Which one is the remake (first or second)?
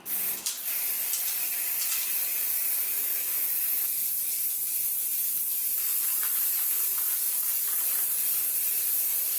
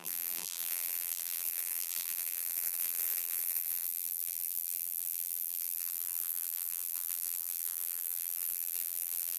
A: second